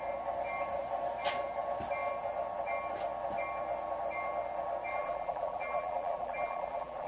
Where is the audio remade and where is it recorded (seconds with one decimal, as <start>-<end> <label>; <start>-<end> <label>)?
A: 0.0-4.9 recorded; 4.9-7.1 remade